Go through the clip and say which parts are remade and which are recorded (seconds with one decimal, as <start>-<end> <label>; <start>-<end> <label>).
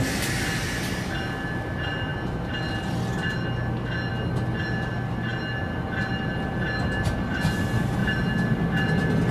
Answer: 0.0-9.3 recorded